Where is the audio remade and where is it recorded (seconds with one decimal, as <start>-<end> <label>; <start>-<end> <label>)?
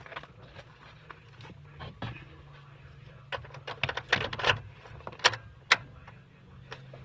0.0-7.0 recorded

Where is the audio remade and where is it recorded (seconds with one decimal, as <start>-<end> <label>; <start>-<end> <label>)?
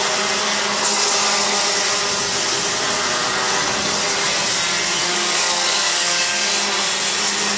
0.0-5.0 recorded; 5.0-6.5 remade; 6.5-7.6 recorded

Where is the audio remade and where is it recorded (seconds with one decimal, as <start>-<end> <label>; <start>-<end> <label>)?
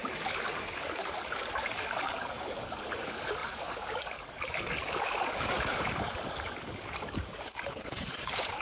0.0-8.6 remade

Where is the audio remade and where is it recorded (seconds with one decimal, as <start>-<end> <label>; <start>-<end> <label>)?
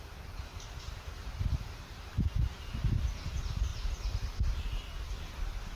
0.0-5.7 recorded